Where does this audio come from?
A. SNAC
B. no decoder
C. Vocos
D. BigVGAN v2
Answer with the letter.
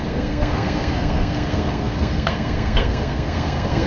A